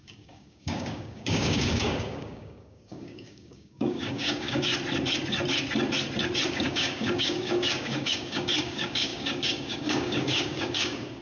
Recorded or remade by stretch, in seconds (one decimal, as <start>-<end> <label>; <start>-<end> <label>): 0.0-4.7 remade; 4.7-6.5 recorded; 6.5-11.2 remade